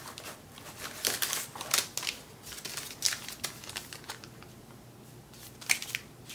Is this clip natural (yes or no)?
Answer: yes